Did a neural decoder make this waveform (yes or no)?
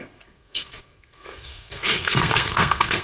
yes